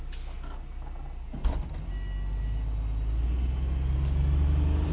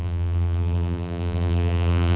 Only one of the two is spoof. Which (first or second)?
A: second